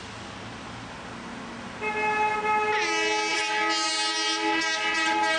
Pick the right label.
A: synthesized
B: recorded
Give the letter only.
B